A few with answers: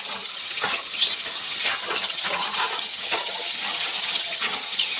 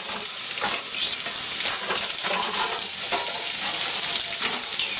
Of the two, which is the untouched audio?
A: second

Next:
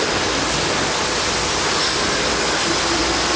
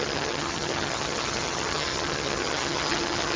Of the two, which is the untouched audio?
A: first